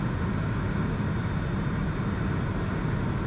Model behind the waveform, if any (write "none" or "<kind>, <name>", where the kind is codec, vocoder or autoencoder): none